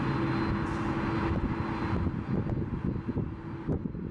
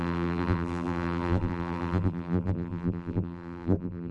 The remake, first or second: second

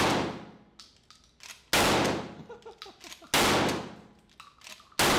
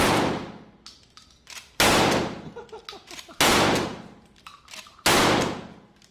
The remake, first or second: second